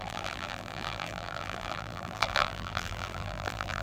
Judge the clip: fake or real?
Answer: fake